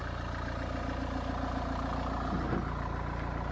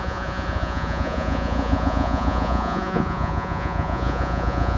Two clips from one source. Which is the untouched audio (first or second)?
first